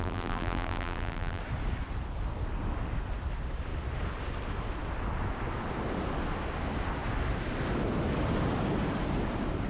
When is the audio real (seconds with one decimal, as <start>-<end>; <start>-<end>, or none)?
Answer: 1.4-9.7